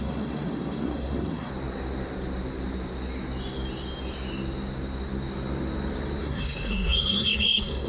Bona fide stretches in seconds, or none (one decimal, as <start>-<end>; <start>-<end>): 1.5-6.2